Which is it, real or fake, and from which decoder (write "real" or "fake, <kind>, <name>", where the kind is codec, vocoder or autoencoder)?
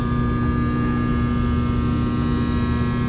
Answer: real